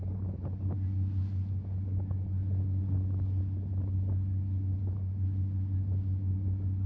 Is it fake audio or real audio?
real